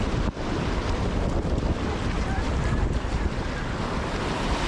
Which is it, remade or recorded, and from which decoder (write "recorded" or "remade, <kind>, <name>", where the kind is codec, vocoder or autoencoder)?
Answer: remade, vocoder, BigVGAN v2